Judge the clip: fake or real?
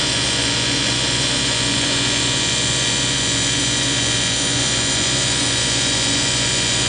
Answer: fake